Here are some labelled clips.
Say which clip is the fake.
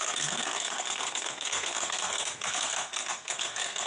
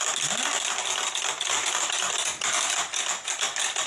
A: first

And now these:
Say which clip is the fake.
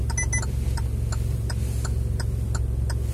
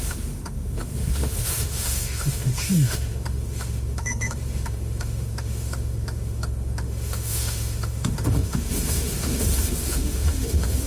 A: second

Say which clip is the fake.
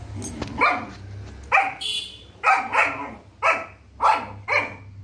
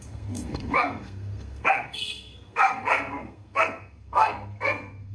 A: second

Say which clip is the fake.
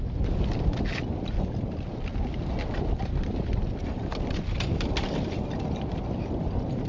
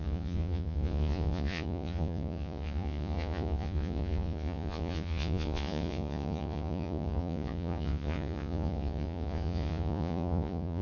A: second